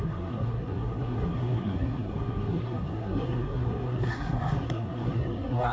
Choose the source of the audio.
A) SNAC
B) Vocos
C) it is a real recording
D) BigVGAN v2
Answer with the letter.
A